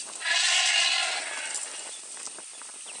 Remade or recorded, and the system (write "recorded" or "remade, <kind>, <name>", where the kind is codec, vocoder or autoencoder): recorded